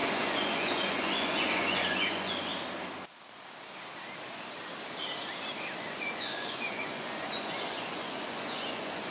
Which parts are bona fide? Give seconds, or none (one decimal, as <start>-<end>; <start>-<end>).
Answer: 2.5-5.8